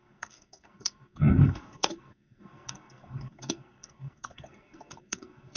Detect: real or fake fake